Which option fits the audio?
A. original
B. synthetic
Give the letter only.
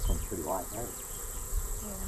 B